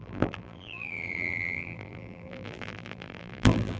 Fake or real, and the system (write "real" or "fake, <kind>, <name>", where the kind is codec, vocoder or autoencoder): fake, vocoder, BigVGAN v2